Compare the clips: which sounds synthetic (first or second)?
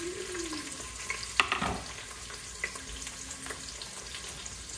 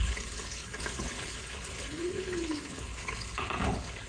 second